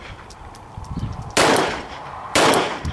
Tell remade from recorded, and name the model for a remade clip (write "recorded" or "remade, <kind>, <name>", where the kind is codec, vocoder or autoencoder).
recorded